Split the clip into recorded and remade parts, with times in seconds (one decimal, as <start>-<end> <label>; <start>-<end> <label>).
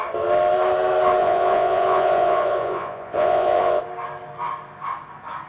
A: 0.0-1.2 recorded; 1.2-3.8 remade; 3.8-5.5 recorded